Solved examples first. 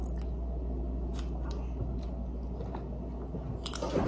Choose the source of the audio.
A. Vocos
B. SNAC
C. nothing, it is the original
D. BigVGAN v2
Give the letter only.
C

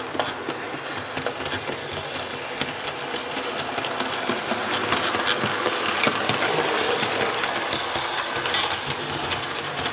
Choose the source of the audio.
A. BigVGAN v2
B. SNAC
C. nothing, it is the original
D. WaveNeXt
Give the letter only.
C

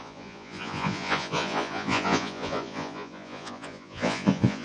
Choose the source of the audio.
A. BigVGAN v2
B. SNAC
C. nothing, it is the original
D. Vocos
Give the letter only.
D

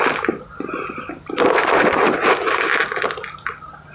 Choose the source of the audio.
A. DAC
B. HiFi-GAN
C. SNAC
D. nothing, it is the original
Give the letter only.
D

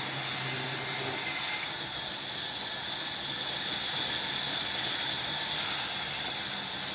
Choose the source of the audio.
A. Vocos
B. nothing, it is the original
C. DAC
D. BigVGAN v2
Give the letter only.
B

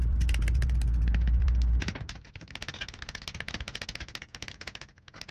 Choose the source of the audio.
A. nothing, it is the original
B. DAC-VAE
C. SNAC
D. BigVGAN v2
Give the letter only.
A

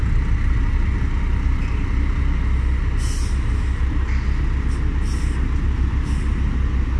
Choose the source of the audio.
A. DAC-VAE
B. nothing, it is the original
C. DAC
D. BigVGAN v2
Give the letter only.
B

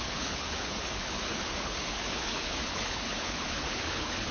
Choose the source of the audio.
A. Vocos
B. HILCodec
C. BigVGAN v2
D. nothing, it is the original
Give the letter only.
B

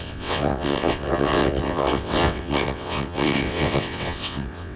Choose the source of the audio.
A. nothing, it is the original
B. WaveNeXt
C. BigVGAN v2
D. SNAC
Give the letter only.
B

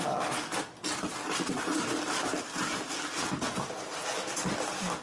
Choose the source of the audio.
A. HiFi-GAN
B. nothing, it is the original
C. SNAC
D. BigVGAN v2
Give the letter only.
B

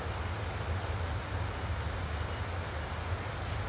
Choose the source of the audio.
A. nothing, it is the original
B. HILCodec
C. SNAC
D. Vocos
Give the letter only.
A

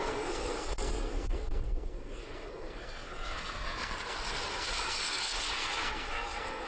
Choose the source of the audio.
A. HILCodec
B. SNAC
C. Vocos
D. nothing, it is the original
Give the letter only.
B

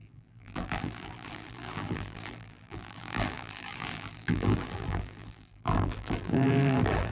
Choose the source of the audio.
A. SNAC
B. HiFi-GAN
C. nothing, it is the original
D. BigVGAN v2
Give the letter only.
D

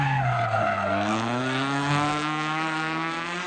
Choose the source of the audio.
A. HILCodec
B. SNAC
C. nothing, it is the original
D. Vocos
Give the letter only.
B